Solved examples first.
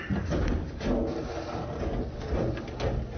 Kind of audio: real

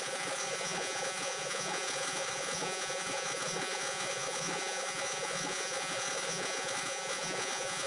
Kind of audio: fake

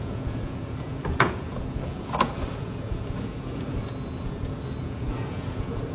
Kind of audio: fake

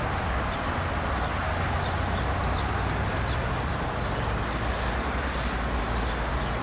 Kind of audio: real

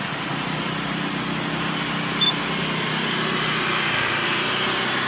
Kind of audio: real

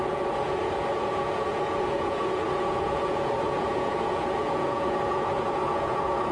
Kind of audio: fake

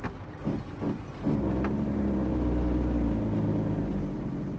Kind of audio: real